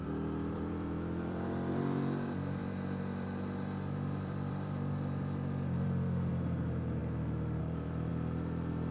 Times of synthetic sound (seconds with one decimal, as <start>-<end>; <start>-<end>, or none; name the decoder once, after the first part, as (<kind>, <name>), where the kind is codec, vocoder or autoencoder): 0.0-7.0 (vocoder, BigVGAN v2); 7.6-8.1